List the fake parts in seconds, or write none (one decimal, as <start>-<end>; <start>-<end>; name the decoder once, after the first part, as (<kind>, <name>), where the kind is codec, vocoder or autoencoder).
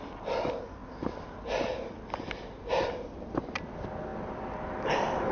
none